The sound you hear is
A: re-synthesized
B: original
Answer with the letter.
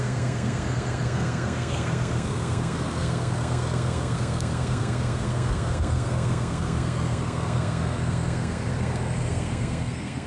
A